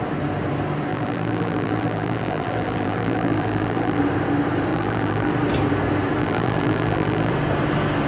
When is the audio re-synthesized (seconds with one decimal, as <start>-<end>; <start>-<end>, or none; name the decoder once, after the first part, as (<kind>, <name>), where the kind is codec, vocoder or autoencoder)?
0.9-4.0 (vocoder, BigVGAN v2); 4.7-5.3; 6.2-7.3